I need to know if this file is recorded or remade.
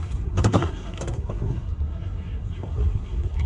remade